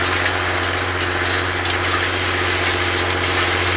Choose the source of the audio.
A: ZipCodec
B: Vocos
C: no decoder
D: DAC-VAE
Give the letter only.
C